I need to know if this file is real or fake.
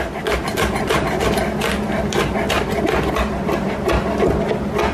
real